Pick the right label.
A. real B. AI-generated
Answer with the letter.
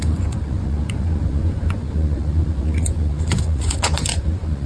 B